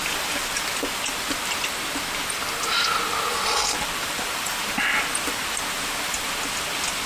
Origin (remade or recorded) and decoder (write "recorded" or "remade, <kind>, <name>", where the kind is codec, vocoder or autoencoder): recorded